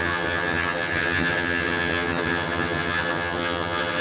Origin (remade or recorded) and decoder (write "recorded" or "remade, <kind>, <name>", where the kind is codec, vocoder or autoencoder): remade, vocoder, HiFi-GAN